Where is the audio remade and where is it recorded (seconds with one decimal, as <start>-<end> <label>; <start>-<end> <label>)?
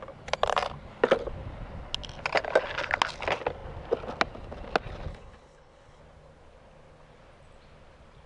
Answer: 0.0-5.1 recorded; 5.1-6.0 remade; 6.0-8.3 recorded